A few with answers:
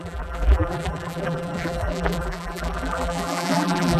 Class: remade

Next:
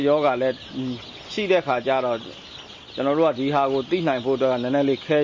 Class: recorded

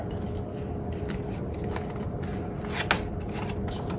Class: recorded